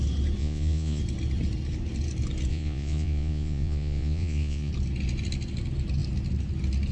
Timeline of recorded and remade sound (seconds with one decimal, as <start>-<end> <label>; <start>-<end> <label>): 0.0-0.4 recorded; 0.4-1.0 remade; 1.0-2.5 recorded; 2.5-4.7 remade; 4.7-6.9 recorded

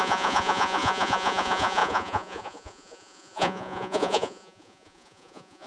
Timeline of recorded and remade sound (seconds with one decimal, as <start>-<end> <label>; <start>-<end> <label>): 0.0-5.7 remade

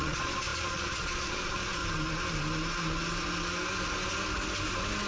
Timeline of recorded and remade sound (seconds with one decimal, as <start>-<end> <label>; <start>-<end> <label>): 0.0-1.8 remade; 1.8-5.1 recorded

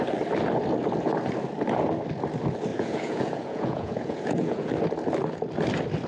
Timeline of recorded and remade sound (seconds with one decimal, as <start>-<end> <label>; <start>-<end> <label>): 0.0-2.7 recorded; 2.7-4.7 remade; 4.7-6.1 recorded

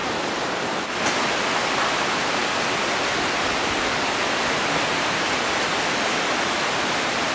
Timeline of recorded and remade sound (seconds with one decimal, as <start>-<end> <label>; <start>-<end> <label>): 0.0-7.3 recorded